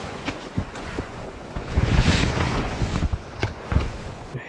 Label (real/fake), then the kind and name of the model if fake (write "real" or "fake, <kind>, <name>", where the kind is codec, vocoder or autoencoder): fake, vocoder, Vocos